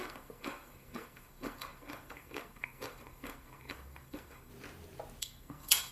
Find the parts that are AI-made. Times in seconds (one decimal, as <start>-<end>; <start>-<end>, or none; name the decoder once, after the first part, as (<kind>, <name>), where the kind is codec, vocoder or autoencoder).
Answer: 0.0-4.5 (codec, SNAC); 5.2-5.9